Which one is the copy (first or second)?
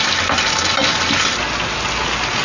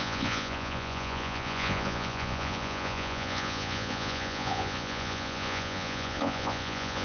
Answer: second